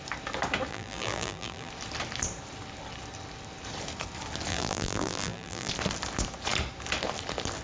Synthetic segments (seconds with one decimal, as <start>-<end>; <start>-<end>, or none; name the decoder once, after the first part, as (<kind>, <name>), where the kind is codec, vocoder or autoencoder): 0.7-1.7 (vocoder, BigVGAN v2); 4.5-5.7